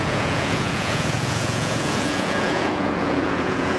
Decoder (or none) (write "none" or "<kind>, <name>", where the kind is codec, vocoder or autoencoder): vocoder, Vocos